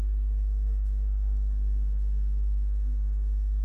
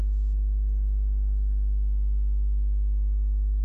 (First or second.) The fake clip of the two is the first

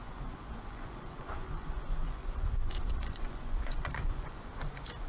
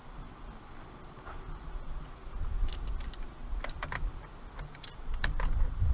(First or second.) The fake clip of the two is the first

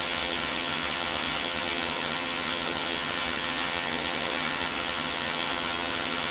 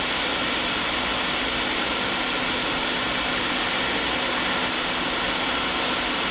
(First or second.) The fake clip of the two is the first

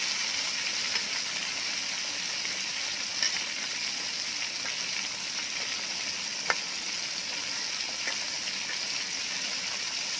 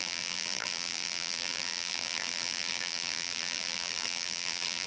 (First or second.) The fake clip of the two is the second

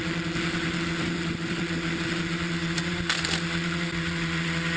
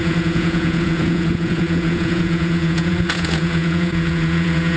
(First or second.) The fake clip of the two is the second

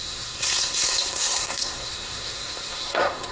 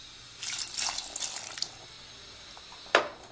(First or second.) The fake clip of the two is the first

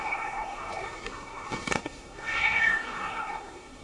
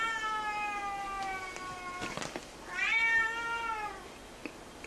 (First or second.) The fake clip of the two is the first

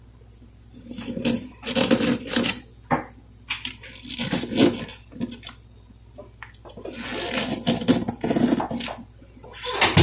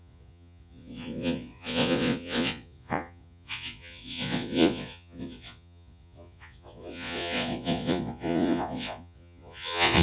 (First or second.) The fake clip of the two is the second